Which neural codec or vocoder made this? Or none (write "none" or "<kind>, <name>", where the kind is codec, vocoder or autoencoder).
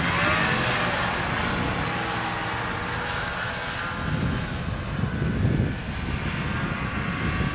none